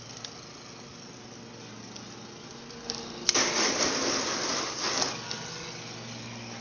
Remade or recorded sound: recorded